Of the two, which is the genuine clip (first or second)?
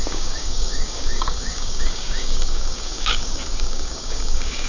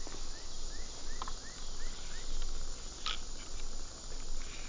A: second